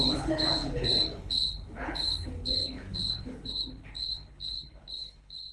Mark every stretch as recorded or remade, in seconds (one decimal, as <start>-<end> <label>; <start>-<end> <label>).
0.0-5.5 remade